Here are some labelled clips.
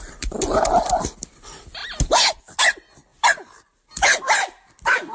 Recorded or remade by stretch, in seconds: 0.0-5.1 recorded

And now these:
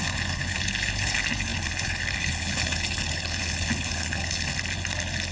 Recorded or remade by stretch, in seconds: 0.0-4.5 remade; 4.5-5.3 recorded

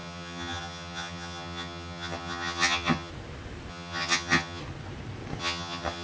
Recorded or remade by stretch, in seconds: 0.0-3.1 remade; 3.1-3.7 recorded; 3.7-4.6 remade; 4.6-5.4 recorded; 5.4-6.0 remade

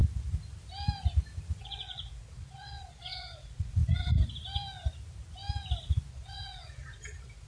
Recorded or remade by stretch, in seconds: 0.0-1.6 recorded; 1.6-3.8 remade; 3.8-6.1 recorded; 6.1-7.5 remade

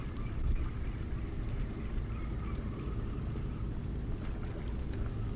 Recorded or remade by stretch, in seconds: 0.0-4.8 recorded; 4.8-5.4 remade

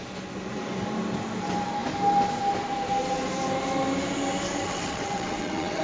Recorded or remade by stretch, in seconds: 0.0-4.6 recorded; 4.6-5.8 remade